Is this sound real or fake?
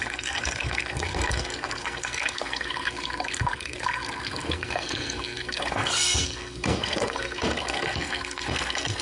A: fake